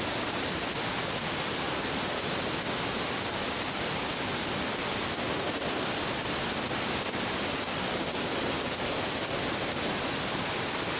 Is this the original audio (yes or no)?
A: yes